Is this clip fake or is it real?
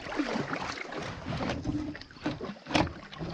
real